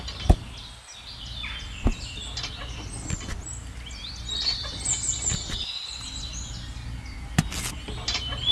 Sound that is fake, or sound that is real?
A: real